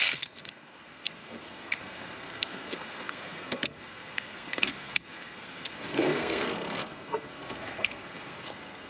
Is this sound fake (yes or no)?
yes